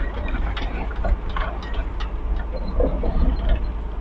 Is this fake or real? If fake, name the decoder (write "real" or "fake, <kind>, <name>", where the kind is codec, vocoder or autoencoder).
real